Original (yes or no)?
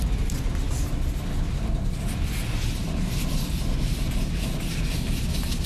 yes